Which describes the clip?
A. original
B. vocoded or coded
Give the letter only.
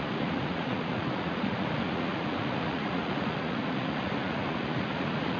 B